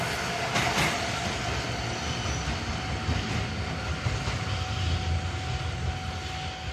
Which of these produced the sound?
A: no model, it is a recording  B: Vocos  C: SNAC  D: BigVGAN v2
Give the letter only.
A